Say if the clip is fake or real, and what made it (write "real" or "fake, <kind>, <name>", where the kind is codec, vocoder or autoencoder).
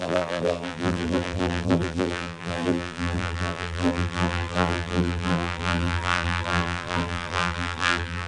fake, vocoder, BigVGAN v2